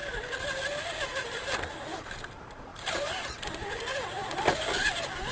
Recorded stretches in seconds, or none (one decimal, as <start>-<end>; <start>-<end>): none